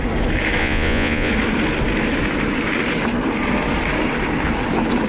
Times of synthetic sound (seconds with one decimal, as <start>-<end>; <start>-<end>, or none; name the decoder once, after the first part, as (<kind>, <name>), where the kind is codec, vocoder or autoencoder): 0.6-1.3 (vocoder, Vocos)